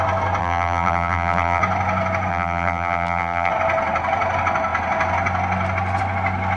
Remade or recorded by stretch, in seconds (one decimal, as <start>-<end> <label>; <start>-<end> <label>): 0.0-0.4 recorded; 0.4-1.6 remade; 1.6-2.3 recorded; 2.3-3.5 remade; 3.5-6.6 recorded